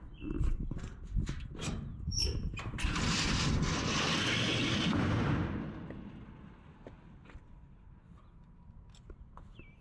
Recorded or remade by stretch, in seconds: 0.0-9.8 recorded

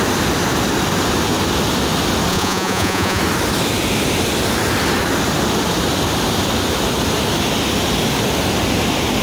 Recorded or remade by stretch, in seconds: 0.0-2.3 recorded; 2.3-3.2 remade; 3.2-9.2 recorded

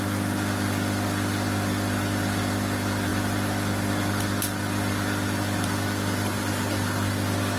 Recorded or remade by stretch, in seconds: 0.0-7.6 recorded

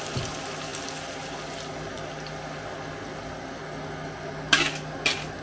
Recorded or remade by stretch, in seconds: 0.0-5.4 recorded

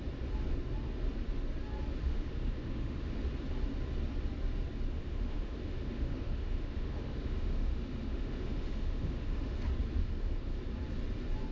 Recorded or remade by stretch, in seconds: 0.0-2.0 recorded; 2.0-3.2 remade; 3.2-4.9 recorded; 4.9-9.6 remade; 9.6-10.0 recorded; 10.0-10.6 remade; 10.6-11.5 recorded

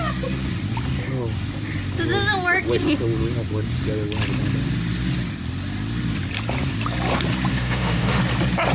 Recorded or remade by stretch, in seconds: 0.0-7.5 recorded; 7.5-8.2 remade; 8.2-8.7 recorded

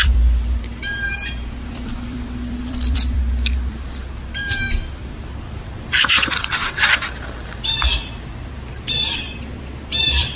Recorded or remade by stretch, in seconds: 0.0-4.0 remade; 4.0-5.0 recorded; 5.0-10.4 remade